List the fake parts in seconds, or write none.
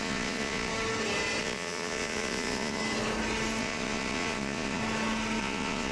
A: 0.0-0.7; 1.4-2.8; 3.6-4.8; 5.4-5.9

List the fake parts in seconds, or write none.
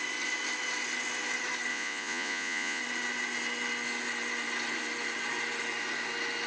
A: 1.7-2.8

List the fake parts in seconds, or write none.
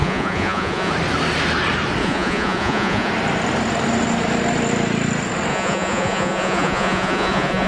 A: 0.0-0.9; 2.0-3.1; 5.5-7.7